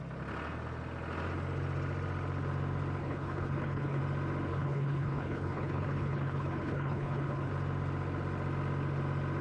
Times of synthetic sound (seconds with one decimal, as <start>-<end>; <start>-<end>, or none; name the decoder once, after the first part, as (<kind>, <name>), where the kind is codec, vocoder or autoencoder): 3.0-4.0 (codec, HILCodec); 4.5-7.5